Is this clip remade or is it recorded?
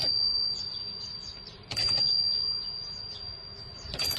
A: remade